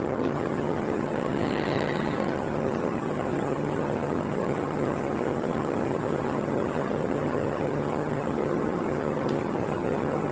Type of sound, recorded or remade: remade